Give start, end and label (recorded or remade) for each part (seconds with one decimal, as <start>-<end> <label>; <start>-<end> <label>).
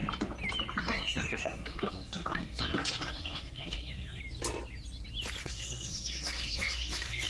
0.0-0.8 recorded; 0.8-4.2 remade; 4.2-5.4 recorded; 5.4-7.3 remade